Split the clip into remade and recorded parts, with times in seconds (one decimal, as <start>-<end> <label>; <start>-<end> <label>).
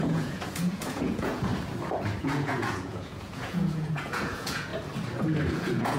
0.0-1.5 remade; 1.5-2.2 recorded; 2.2-4.7 remade; 4.7-5.5 recorded; 5.5-6.0 remade